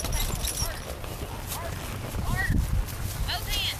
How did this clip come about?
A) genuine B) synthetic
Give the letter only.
A